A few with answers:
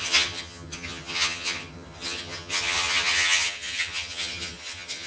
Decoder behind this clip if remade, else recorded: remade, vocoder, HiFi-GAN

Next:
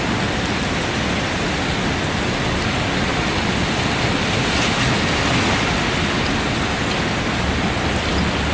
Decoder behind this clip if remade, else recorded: recorded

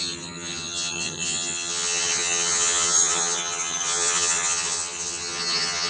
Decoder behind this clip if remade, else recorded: remade, vocoder, HiFi-GAN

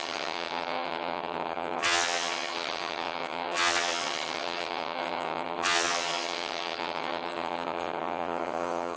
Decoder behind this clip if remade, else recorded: remade, vocoder, HiFi-GAN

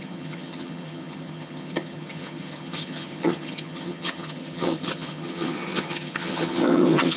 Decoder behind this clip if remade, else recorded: remade, vocoder, HiFi-GAN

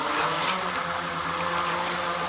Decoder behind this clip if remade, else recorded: recorded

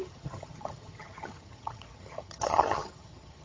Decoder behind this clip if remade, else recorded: remade, vocoder, HiFi-GAN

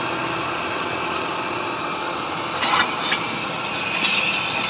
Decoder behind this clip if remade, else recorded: recorded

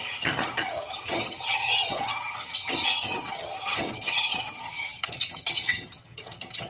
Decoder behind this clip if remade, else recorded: remade, vocoder, HiFi-GAN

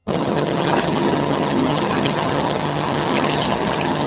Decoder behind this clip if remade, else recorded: remade, vocoder, HiFi-GAN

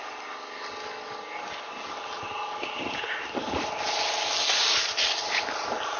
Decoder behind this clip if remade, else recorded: recorded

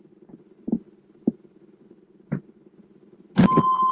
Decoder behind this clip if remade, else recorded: recorded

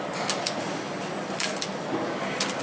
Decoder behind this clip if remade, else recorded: recorded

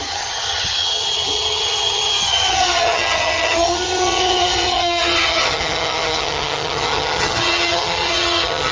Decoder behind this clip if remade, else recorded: remade, vocoder, HiFi-GAN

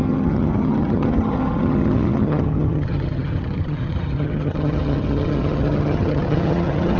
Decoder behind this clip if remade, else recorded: remade, vocoder, HiFi-GAN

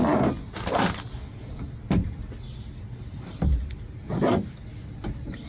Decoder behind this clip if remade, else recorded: recorded